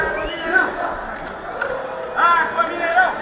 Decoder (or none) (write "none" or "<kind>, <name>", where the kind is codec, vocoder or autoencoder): none